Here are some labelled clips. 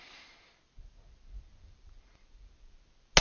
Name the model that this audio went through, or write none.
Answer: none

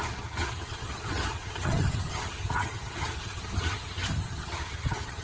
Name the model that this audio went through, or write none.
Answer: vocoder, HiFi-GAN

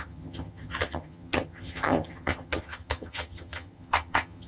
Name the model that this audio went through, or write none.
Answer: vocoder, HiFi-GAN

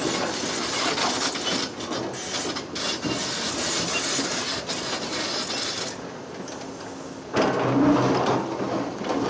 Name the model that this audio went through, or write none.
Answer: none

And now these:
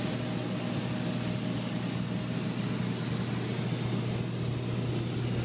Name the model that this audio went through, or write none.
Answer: none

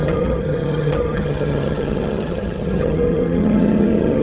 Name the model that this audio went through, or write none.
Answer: vocoder, HiFi-GAN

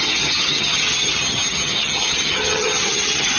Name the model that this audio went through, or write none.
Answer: vocoder, HiFi-GAN